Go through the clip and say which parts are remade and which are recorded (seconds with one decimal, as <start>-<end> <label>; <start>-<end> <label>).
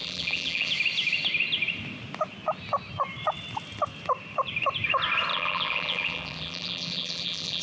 0.0-0.7 remade; 0.7-5.3 recorded; 5.3-7.6 remade